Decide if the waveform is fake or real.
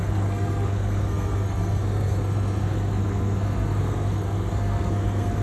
fake